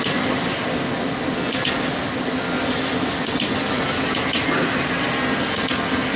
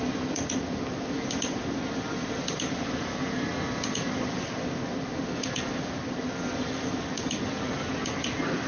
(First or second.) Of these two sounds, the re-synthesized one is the second